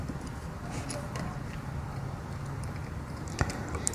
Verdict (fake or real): real